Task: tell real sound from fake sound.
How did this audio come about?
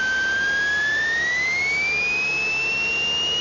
real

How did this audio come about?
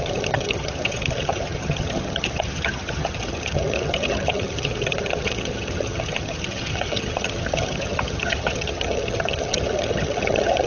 fake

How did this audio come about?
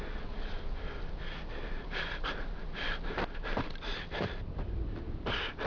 real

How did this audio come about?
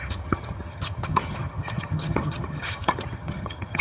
fake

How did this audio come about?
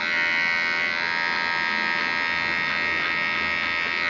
real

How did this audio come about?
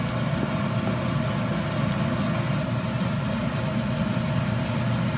real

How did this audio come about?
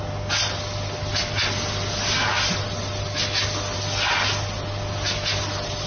real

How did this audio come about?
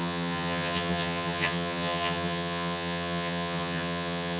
fake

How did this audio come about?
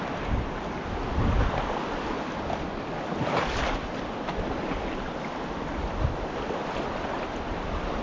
real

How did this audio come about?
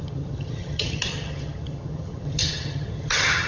fake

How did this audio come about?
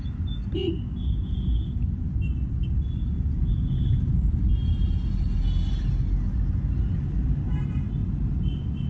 real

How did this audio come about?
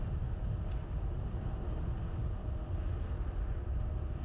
real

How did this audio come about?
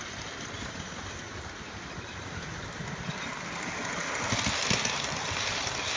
real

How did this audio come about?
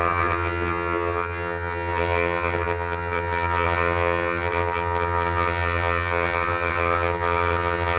fake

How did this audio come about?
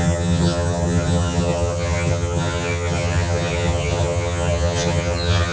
fake